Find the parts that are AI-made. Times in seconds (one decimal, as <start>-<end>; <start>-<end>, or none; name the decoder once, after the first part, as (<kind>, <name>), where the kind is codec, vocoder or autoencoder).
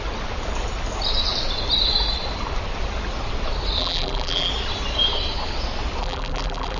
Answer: 3.8-4.5 (vocoder, BigVGAN v2); 6.0-6.8